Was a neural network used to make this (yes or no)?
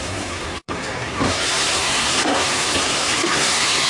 yes